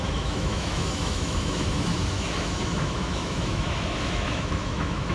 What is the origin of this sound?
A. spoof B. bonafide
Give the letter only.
A